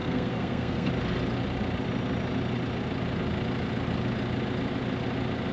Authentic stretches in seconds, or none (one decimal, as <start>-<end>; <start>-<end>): 0.9-5.5

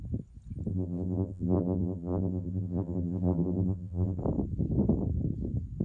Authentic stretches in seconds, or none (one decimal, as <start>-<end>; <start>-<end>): 0.0-0.7; 4.2-5.8

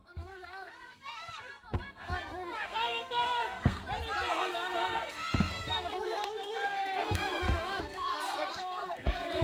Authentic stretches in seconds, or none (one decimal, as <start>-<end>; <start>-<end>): 3.8-4.3

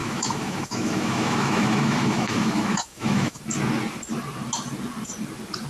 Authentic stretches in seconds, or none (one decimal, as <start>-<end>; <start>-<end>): 3.4-5.7

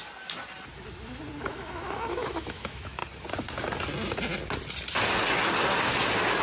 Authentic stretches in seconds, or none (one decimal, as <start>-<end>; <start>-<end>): 0.0-1.4; 3.0-6.4